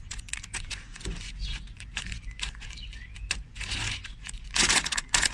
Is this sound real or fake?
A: fake